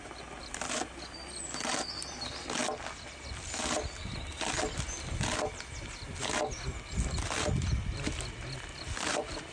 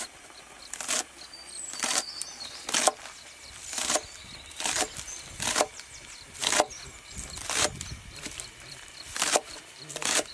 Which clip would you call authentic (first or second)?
first